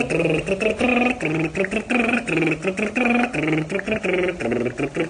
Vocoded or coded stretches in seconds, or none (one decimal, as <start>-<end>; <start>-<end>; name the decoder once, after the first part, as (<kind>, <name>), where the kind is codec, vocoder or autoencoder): none